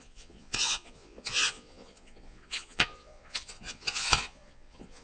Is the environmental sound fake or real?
fake